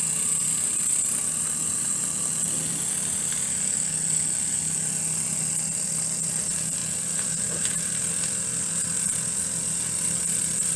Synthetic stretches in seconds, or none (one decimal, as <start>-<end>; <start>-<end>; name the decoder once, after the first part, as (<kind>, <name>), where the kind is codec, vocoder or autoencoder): none